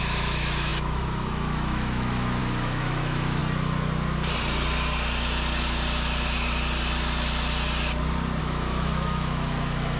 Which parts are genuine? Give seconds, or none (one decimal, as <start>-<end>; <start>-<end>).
3.4-8.4